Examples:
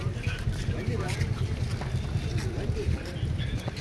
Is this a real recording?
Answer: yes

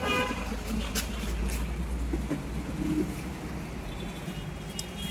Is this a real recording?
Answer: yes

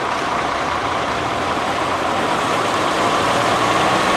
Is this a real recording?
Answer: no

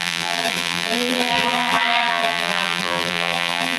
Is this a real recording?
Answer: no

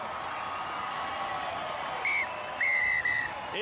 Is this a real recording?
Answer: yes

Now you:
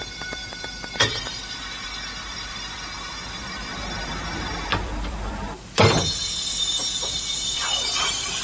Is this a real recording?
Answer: no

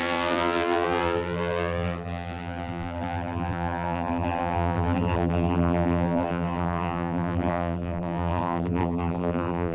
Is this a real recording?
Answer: no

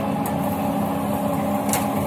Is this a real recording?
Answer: yes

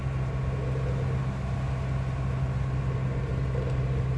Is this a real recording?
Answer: yes